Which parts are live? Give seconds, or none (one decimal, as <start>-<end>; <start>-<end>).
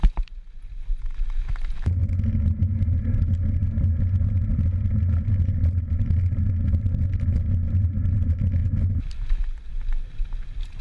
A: 0.0-10.8